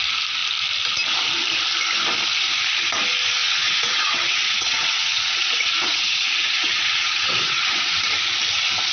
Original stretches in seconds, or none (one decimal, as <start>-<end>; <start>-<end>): 0.0-3.4; 8.0-8.9